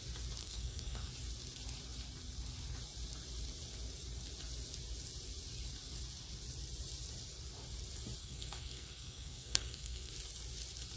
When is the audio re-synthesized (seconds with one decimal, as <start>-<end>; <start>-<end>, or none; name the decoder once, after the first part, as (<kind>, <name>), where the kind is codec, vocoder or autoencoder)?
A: 0.4-1.1 (codec, SNAC); 8.2-10.1